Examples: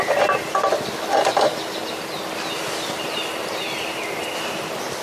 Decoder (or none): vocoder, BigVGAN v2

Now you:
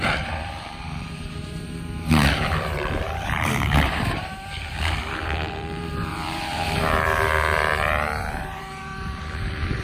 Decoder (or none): vocoder, BigVGAN v2